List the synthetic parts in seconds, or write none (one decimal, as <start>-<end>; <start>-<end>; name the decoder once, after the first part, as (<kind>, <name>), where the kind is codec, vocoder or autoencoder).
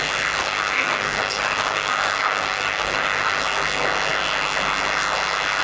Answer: 0.4-3.4 (codec, DAC)